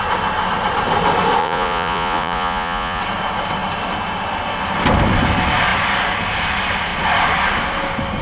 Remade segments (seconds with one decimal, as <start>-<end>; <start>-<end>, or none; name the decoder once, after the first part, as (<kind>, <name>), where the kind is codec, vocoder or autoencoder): 1.4-3.0 (vocoder, Vocos)